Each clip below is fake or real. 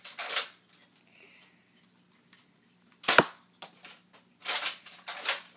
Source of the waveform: real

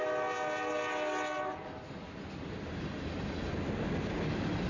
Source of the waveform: real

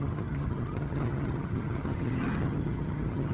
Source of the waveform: fake